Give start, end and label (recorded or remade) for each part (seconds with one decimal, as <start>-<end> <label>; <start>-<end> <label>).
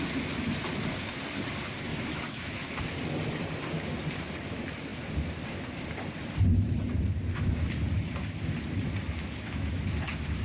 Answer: 0.0-1.9 recorded; 1.9-2.8 remade; 2.8-9.2 recorded; 9.2-9.8 remade; 9.8-10.4 recorded